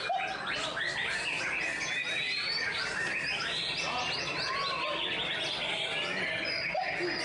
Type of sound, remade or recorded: recorded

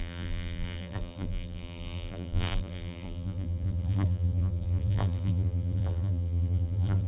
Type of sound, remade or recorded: remade